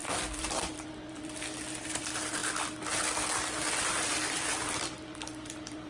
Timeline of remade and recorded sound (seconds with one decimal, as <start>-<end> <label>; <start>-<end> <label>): 0.0-2.4 remade; 2.4-3.8 recorded; 3.8-5.9 remade